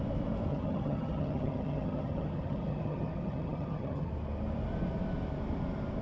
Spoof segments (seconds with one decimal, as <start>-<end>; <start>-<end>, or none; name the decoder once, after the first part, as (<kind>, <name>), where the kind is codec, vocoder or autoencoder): 0.5-4.1 (vocoder, HiFi-GAN)